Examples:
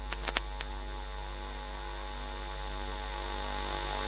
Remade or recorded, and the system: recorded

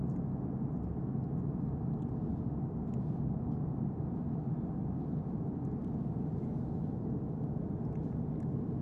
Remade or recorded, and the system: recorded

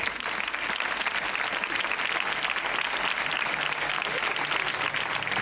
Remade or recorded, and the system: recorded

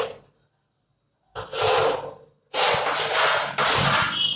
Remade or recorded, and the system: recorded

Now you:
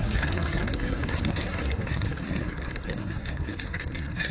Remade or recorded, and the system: remade, codec, SNAC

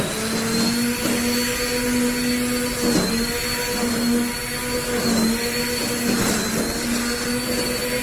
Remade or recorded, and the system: recorded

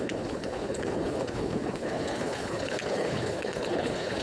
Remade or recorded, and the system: remade, codec, HILCodec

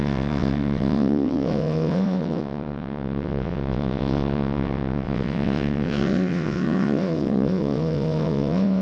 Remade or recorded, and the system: remade, vocoder, WaveNeXt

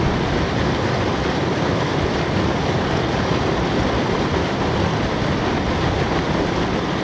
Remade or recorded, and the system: recorded